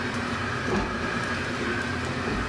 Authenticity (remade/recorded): remade